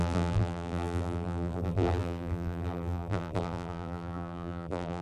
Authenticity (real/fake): fake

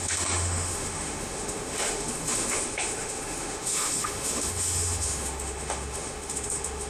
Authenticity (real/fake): fake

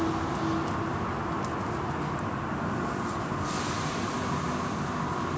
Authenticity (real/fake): real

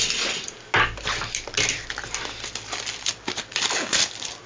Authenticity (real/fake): real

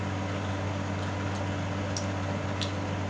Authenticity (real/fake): real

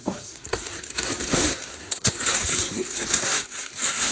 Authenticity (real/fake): fake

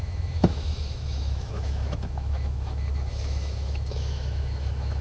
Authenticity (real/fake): fake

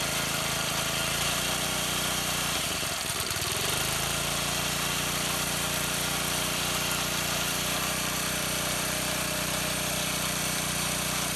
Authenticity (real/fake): fake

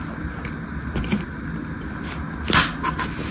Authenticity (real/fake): real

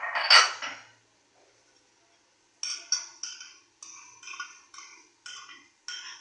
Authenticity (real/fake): real